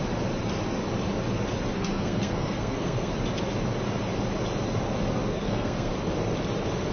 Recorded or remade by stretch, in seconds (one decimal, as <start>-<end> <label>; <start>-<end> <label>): 0.0-1.7 recorded; 1.7-3.1 remade; 3.1-5.3 recorded; 5.3-5.9 remade; 5.9-6.9 recorded